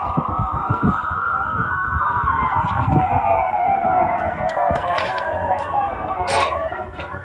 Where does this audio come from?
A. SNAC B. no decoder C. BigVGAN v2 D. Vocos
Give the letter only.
A